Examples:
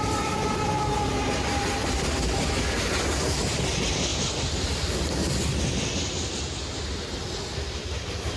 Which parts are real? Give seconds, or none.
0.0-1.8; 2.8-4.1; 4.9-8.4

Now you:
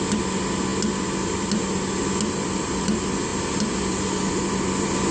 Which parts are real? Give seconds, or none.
0.0-5.1